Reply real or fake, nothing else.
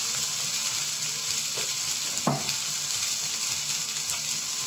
real